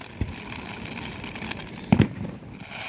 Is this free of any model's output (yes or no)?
yes